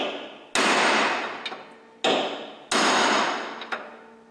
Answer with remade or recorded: recorded